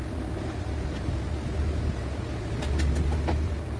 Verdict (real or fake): real